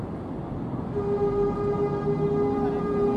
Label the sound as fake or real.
real